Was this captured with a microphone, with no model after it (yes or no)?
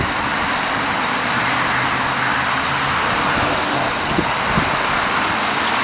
yes